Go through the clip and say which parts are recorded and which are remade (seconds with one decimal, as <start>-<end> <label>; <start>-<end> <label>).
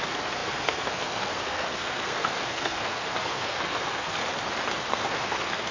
0.0-4.2 remade; 4.2-4.9 recorded; 4.9-5.7 remade